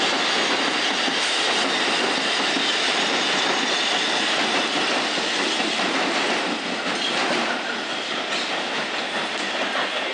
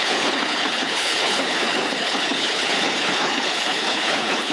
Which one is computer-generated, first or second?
second